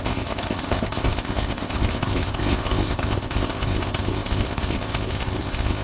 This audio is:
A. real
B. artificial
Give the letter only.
B